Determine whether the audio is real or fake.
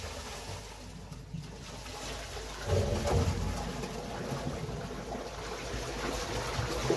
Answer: real